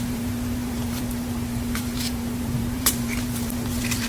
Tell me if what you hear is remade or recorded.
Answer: remade